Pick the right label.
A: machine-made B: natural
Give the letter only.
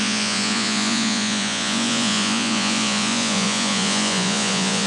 A